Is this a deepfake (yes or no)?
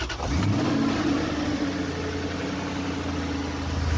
no